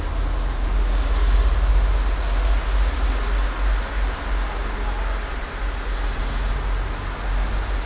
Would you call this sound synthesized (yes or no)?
no